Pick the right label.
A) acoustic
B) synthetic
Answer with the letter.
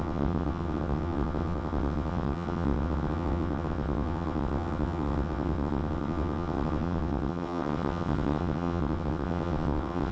B